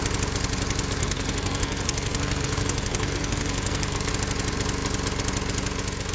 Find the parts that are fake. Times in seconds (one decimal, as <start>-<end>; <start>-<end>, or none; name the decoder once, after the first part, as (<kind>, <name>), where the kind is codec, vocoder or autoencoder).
1.0-4.1 (codec, SNAC)